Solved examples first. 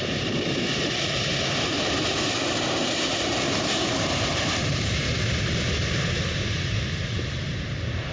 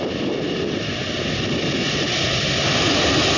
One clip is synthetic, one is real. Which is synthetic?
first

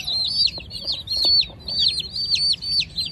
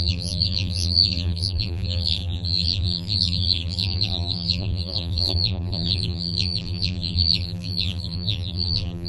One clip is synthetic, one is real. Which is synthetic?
second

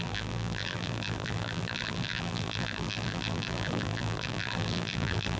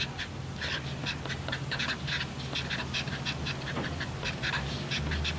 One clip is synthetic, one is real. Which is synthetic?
first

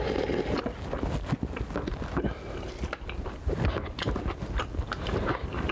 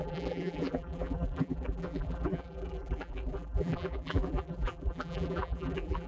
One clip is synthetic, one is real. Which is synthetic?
second